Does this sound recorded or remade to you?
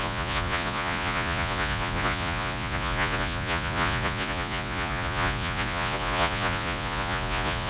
remade